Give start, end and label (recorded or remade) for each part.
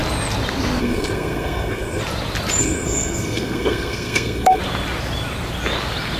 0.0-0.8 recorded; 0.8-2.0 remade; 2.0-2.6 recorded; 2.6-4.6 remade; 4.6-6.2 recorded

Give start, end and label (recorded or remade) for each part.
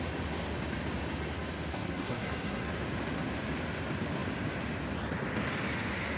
0.0-1.7 recorded; 1.7-2.7 remade; 2.7-6.2 recorded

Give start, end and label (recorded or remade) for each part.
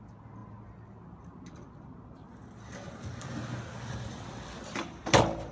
0.0-5.5 recorded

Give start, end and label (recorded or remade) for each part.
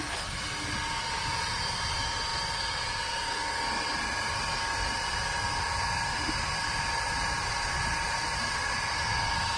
0.0-9.6 recorded